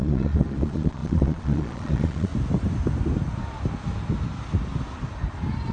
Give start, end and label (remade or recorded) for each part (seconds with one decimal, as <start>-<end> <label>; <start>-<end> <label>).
0.0-2.3 remade; 2.3-5.7 recorded